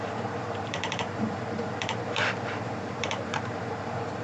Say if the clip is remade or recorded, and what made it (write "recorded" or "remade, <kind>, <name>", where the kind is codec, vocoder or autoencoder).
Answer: remade, vocoder, BigVGAN v2